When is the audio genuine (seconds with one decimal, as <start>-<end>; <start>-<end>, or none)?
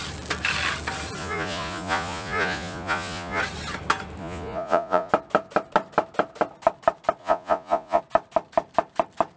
0.0-1.2; 3.4-4.2; 5.1-7.2; 8.0-9.4